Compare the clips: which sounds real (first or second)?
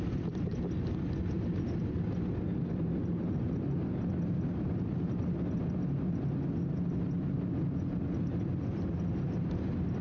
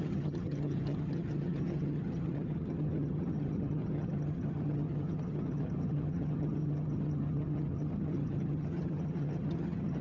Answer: first